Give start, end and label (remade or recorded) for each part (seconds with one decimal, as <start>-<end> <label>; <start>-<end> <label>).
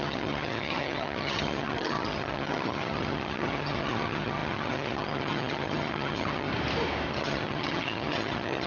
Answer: 0.0-6.5 remade; 6.5-7.1 recorded; 7.1-8.7 remade